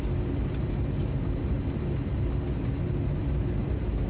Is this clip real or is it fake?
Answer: real